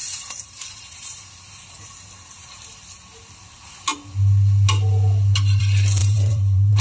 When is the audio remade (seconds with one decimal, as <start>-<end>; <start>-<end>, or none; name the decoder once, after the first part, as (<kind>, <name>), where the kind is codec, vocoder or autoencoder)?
0.0-1.3 (vocoder, BigVGAN v2); 6.0-6.8